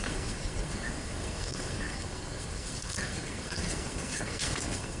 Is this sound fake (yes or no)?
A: yes